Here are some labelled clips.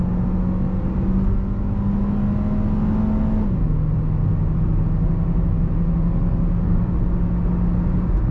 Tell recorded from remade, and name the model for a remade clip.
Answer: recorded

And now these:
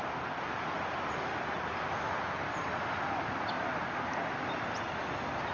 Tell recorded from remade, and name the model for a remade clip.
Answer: recorded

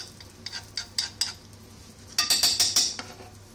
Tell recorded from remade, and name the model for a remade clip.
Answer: recorded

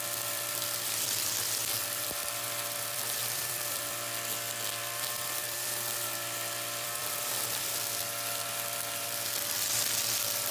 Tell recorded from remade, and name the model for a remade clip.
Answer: remade, vocoder, BigVGAN v2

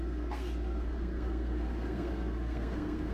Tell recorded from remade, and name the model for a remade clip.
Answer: remade, codec, SNAC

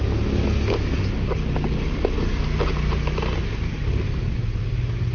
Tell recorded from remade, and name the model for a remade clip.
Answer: recorded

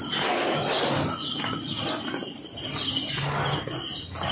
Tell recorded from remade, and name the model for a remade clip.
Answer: recorded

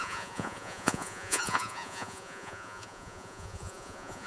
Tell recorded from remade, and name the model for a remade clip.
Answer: remade, vocoder, Vocos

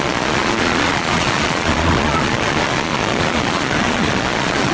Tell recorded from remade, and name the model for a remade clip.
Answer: remade, vocoder, Vocos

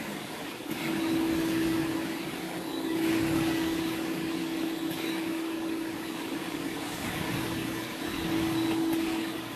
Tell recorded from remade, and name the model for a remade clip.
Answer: remade, codec, DAC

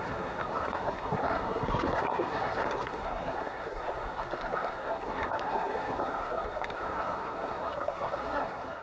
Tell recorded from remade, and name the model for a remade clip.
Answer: remade, codec, SNAC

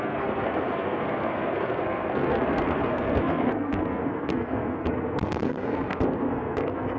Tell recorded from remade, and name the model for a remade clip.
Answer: remade, codec, SNAC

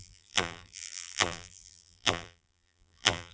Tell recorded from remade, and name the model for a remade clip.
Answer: remade, vocoder, BigVGAN v2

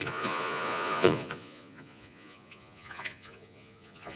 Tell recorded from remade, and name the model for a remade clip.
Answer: remade, vocoder, Vocos